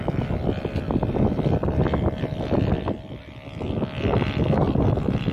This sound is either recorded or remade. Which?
recorded